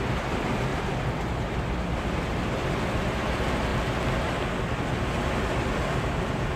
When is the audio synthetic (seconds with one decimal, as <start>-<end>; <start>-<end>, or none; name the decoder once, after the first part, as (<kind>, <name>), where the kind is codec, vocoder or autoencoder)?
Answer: none